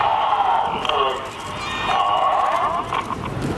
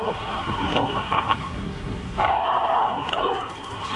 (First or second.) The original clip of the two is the first